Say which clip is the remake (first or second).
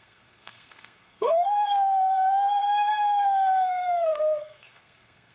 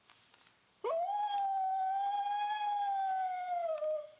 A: first